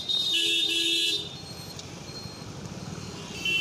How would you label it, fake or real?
real